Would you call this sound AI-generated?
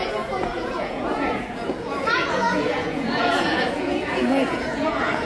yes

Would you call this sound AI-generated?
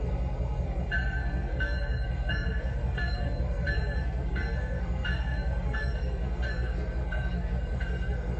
yes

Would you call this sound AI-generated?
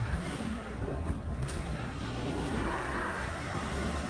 yes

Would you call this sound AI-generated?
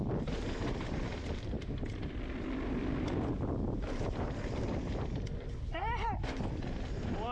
no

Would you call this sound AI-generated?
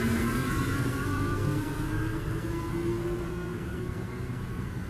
yes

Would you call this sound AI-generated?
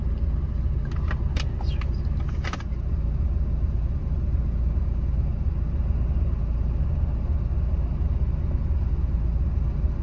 no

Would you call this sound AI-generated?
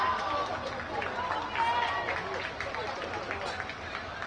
no